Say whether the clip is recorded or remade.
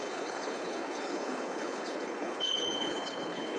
remade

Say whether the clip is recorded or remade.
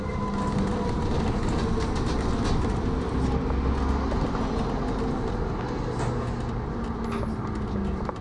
recorded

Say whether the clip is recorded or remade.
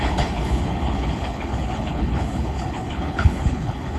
remade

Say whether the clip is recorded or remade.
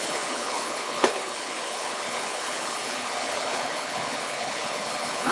remade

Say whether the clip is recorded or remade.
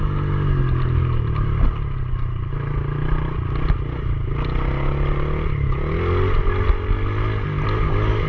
recorded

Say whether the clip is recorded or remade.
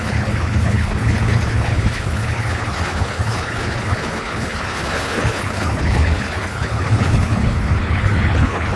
remade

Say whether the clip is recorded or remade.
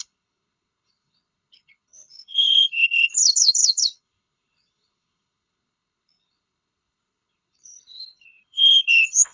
remade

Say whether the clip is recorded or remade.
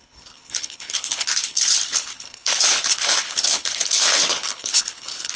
remade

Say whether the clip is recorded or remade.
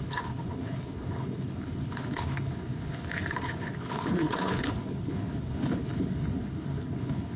remade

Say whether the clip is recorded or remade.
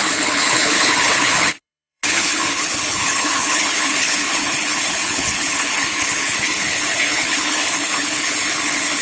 remade